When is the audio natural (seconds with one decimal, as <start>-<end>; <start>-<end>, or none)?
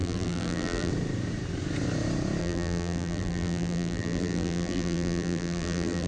0.9-2.4